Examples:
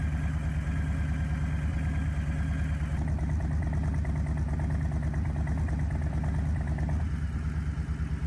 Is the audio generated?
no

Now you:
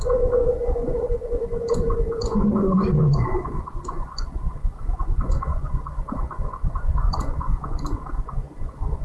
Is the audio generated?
yes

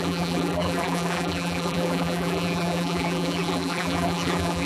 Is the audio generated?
yes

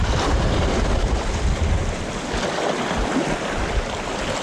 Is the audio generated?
no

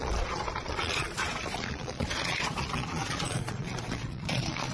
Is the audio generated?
yes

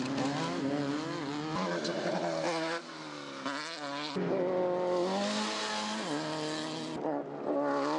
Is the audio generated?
no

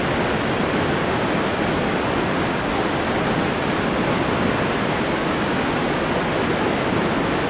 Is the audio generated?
no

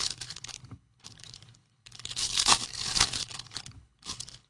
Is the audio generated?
yes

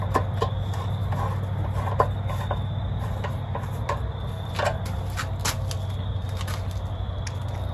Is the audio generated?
no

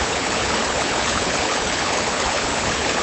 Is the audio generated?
yes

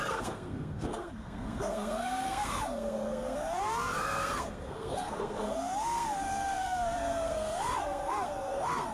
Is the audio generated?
yes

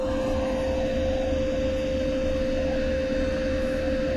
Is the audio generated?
no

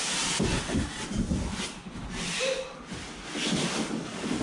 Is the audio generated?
no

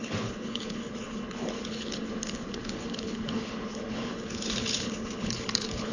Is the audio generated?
yes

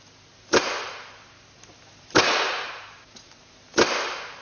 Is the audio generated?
yes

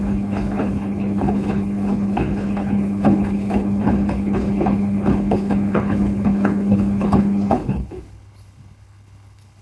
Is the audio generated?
yes